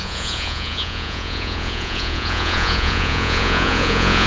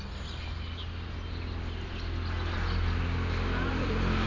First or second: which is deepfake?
first